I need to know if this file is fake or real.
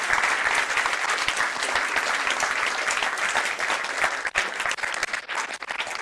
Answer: real